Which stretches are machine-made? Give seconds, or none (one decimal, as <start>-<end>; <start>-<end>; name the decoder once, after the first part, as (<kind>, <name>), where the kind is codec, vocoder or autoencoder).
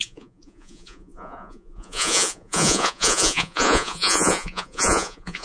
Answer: 0.0-5.4 (vocoder, Vocos)